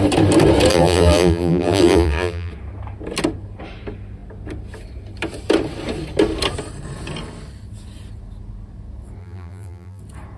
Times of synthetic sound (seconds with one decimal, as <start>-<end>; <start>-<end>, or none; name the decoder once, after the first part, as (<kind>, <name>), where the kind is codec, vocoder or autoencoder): 0.7-2.5 (vocoder, BigVGAN v2); 9.2-10.0

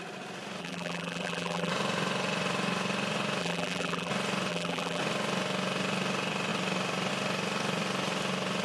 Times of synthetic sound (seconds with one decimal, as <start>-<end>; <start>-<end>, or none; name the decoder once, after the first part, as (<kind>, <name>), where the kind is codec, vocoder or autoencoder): 0.6-1.7 (vocoder, BigVGAN v2); 3.4-4.1; 4.5-5.0

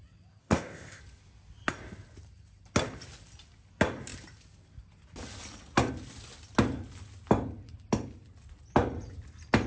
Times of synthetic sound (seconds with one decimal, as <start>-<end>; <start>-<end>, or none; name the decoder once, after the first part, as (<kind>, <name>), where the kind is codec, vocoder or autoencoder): 0.4-1.0 (codec, ZipCodec)

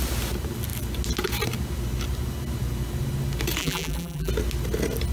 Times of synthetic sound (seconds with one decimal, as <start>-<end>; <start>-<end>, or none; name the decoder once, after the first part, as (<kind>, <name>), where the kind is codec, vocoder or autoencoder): 3.6-4.3 (vocoder, BigVGAN v2)

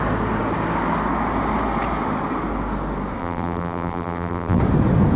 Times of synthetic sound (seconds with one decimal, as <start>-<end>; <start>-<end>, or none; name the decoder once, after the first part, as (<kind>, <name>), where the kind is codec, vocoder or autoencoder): 3.2-4.6 (vocoder, BigVGAN v2)

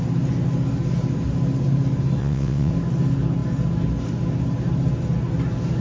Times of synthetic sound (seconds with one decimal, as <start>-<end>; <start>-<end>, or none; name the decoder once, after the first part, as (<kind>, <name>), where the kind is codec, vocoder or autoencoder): 2.2-2.7 (vocoder, WaveNeXt)